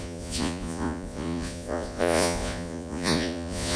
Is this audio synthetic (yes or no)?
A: yes